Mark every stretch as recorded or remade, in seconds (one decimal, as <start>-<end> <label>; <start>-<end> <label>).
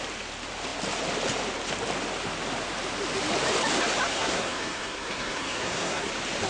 0.0-4.1 recorded; 4.1-6.1 remade; 6.1-6.5 recorded